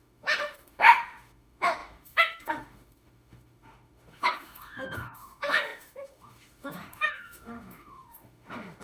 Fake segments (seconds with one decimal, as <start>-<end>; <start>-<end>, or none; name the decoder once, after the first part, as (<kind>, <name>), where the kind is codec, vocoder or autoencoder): 0.0-8.8 (autoencoder, DAC-VAE)